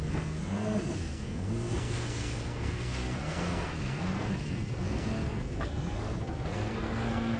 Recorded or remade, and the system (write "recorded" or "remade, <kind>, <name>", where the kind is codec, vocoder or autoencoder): remade, codec, SNAC